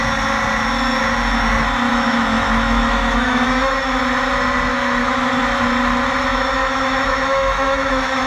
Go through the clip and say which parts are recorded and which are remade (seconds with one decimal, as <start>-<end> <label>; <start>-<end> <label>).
0.0-1.9 recorded; 1.9-4.0 remade; 4.0-4.7 recorded; 4.7-5.4 remade; 5.4-6.3 recorded; 6.3-8.3 remade

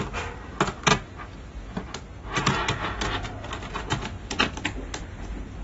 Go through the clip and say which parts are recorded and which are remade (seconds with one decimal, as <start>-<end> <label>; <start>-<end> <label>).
0.0-5.6 recorded

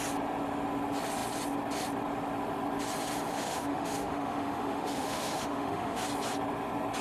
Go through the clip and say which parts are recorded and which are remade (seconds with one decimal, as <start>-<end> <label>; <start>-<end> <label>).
0.0-3.3 recorded; 3.3-6.0 remade; 6.0-7.0 recorded

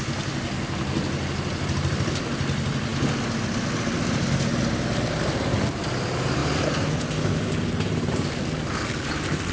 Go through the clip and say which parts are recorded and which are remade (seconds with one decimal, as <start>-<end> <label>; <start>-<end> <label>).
0.0-9.5 recorded

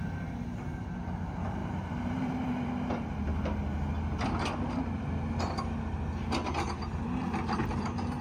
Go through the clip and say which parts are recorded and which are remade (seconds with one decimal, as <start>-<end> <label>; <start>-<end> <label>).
0.0-1.6 recorded; 1.6-2.7 remade; 2.7-8.2 recorded

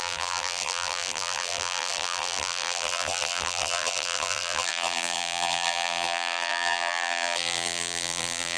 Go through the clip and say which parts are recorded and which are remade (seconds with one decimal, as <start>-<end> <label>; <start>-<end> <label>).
0.0-8.6 remade

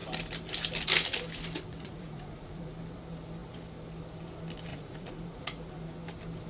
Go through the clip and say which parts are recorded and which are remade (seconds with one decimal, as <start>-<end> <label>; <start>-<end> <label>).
0.0-1.7 recorded; 1.7-2.7 remade; 2.7-4.7 recorded; 4.7-5.9 remade; 5.9-6.5 recorded

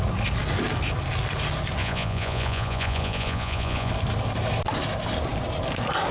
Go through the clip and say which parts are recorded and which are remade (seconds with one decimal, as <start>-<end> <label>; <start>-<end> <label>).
0.0-1.8 recorded; 1.8-3.9 remade; 3.9-6.1 recorded